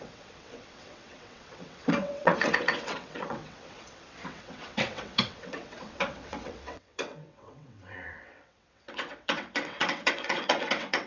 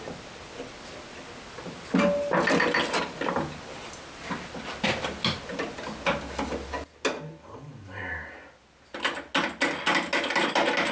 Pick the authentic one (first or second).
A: second